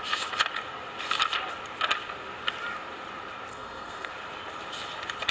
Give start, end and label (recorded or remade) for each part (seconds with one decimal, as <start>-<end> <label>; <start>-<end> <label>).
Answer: 0.0-3.5 recorded; 3.5-4.1 remade; 4.1-5.3 recorded